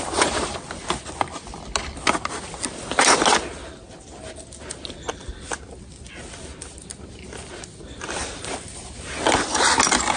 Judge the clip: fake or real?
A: real